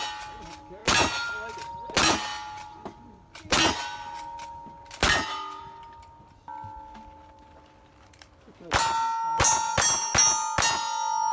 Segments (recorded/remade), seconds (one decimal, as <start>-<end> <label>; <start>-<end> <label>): 0.0-11.3 recorded